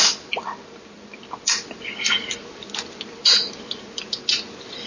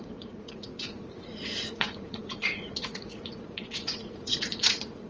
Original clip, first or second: first